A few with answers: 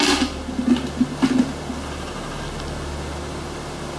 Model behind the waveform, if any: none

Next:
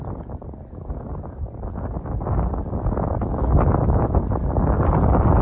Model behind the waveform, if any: none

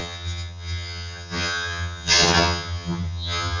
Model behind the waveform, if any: vocoder, HiFi-GAN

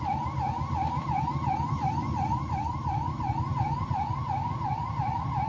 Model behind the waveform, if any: none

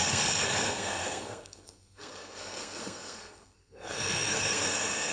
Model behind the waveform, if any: codec, SNAC